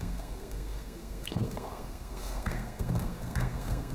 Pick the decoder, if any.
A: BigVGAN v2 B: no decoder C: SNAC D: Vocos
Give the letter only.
C